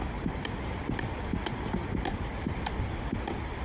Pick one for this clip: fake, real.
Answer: real